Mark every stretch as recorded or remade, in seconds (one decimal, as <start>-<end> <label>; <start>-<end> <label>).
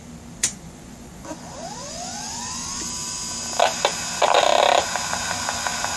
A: 0.0-0.4 recorded; 0.4-2.8 remade; 2.8-6.0 recorded